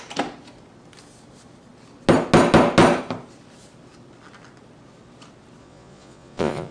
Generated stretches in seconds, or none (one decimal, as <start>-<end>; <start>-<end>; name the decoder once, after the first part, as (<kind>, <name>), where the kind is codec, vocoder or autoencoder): 5.6-6.7 (vocoder, Vocos)